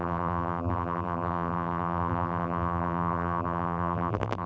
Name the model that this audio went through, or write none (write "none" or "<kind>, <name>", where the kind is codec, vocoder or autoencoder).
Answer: vocoder, BigVGAN v2